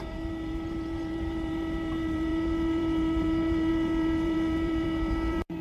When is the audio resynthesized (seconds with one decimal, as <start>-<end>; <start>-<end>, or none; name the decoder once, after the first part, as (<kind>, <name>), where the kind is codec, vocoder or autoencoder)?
0.0-5.6 (vocoder, BigVGAN v2)